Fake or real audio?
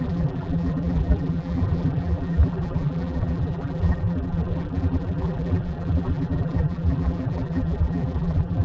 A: fake